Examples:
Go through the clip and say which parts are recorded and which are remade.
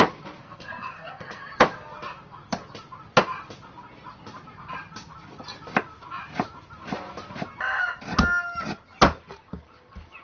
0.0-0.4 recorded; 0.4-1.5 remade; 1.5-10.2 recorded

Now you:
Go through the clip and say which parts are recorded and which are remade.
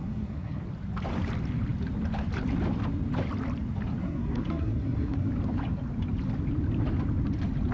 0.0-0.6 remade; 0.6-4.0 recorded; 4.0-5.3 remade; 5.3-7.7 recorded